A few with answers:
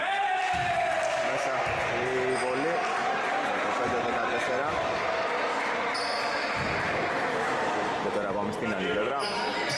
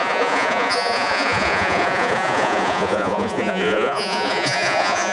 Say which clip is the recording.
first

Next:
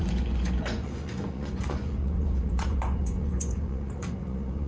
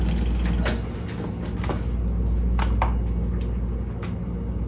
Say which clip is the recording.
second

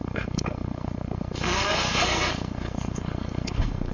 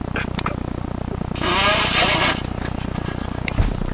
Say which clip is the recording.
second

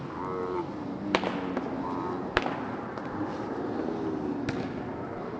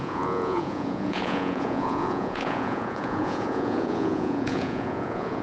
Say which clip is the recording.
first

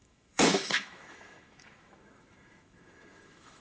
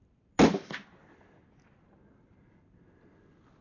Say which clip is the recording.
second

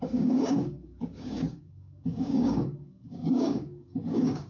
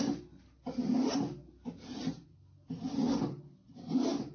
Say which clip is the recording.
second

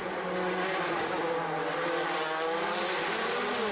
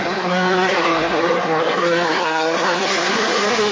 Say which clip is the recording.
first